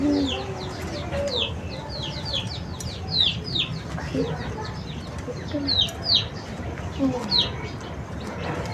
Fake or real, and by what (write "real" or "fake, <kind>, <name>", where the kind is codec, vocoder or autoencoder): real